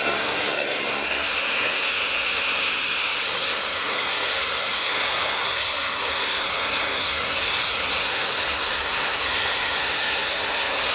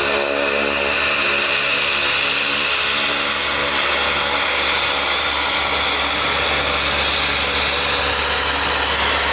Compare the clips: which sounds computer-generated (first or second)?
first